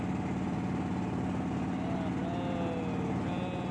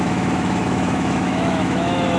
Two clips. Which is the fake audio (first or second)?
second